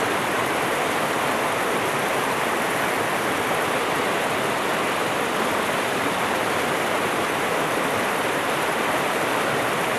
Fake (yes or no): no